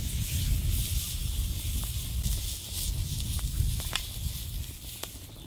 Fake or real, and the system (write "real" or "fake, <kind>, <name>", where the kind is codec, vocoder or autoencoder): real